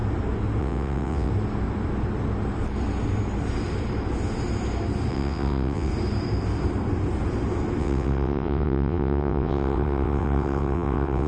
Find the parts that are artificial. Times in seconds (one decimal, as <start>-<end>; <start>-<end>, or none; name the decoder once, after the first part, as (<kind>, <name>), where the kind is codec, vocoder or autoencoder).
0.6-1.3 (vocoder, WaveNeXt); 5.1-5.9; 7.8-11.3